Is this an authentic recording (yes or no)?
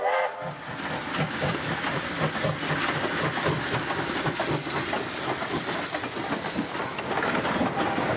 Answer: yes